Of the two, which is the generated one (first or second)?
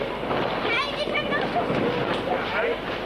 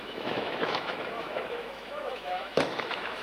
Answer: second